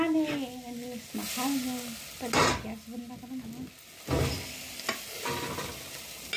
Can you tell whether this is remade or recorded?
recorded